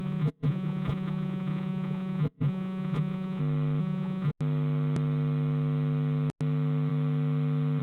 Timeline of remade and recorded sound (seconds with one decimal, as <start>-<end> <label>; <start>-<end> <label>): 0.0-3.4 remade; 3.4-3.8 recorded; 3.8-4.3 remade; 4.3-7.8 recorded